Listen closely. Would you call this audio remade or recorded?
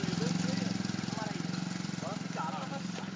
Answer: recorded